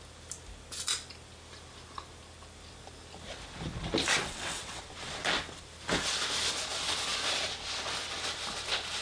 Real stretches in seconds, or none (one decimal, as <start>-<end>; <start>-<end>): 0.0-4.2; 4.8-9.0

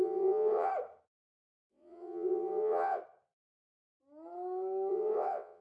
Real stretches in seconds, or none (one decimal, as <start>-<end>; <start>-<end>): 0.7-1.7; 3.0-4.9

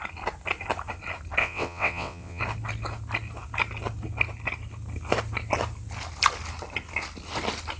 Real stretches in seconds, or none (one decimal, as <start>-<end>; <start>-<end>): 0.0-1.4; 2.4-7.8

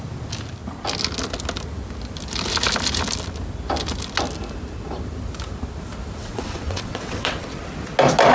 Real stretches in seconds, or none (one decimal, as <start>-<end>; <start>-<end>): 0.0-6.2; 7.6-8.3

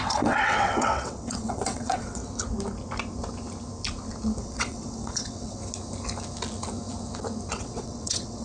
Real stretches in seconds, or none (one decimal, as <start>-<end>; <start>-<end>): 2.2-4.4; 5.6-7.5

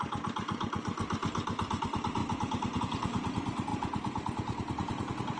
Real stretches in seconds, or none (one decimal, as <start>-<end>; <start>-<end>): 0.0-5.4